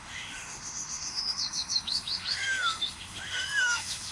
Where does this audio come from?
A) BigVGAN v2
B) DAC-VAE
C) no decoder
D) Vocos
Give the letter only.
B